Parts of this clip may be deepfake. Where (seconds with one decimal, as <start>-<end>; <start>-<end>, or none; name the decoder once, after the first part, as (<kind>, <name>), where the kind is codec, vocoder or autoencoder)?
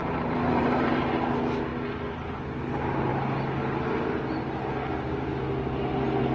0.0-1.1 (vocoder, BigVGAN v2)